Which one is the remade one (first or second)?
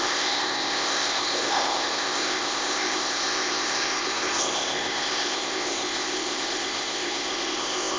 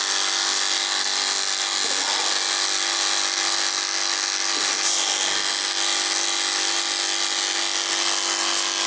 first